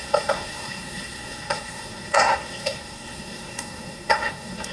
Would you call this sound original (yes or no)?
no